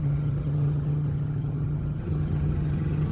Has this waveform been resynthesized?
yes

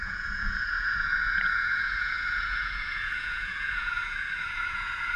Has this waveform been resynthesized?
yes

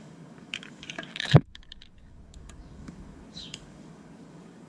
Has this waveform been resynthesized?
yes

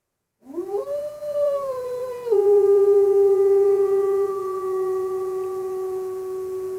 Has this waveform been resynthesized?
yes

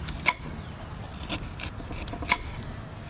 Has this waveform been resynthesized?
no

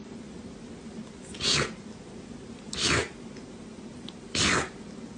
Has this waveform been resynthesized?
no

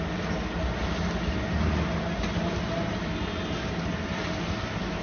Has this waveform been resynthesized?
no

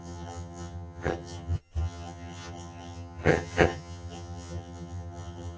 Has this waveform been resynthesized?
yes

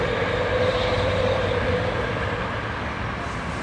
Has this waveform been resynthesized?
no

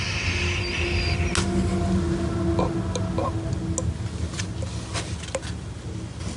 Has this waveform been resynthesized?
no